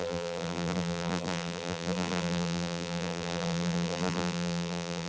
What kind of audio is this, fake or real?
fake